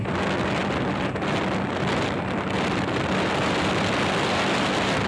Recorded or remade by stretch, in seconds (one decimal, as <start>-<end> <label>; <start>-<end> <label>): 0.0-0.6 recorded; 0.6-3.7 remade; 3.7-5.1 recorded